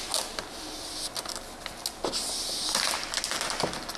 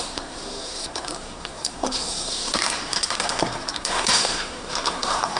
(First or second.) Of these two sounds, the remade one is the second